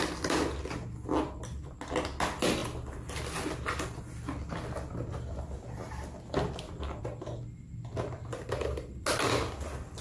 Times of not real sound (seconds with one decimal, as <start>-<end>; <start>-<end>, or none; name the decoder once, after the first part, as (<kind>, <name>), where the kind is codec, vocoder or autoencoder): none